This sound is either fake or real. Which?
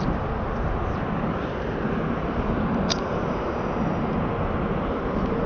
real